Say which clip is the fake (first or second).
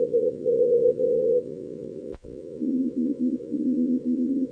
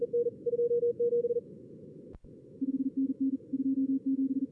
first